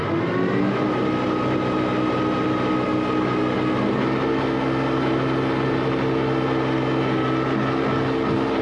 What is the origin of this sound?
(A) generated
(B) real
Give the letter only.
B